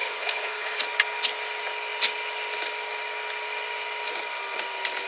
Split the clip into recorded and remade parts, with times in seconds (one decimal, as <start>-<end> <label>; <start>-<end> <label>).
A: 0.0-0.8 remade; 0.8-5.1 recorded